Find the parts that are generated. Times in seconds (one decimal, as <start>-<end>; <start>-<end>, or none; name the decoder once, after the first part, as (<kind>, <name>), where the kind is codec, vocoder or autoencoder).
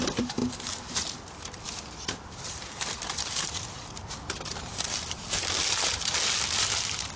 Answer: 0.0-4.0 (vocoder, BigVGAN v2); 4.6-7.2